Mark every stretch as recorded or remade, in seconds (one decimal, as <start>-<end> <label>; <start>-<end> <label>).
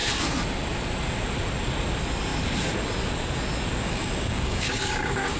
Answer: 0.0-3.8 recorded; 3.8-5.4 remade